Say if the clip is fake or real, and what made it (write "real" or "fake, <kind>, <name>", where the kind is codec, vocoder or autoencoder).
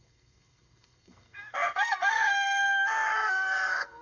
fake, codec, SNAC